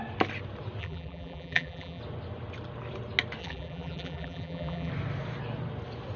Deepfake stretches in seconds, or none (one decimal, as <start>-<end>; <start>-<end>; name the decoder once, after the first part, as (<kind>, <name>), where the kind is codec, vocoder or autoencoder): 0.8-2.0 (vocoder, BigVGAN v2); 3.4-4.9